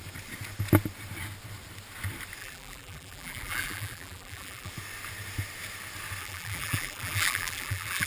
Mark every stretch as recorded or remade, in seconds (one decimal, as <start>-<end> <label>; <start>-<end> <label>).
0.0-2.4 recorded; 2.4-4.7 remade; 4.7-6.2 recorded; 6.2-8.1 remade